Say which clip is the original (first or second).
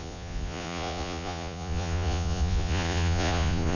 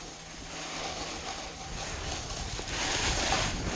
second